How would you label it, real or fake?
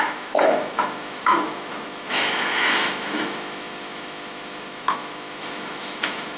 fake